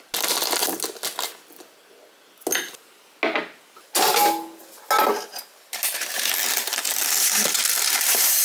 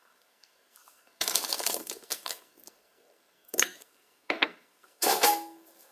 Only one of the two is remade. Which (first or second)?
second